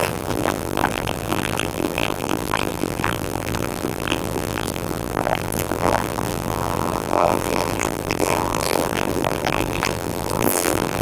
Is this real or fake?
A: fake